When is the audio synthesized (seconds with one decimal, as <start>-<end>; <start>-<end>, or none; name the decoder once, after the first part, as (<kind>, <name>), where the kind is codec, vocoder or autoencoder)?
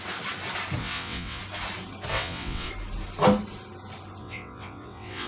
0.8-1.4 (vocoder, WaveNeXt); 2.1-2.7; 4.2-5.3